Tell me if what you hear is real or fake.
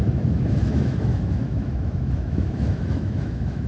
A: fake